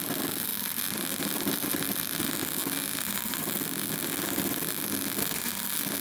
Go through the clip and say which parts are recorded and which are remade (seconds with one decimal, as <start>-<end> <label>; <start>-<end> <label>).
0.0-6.0 recorded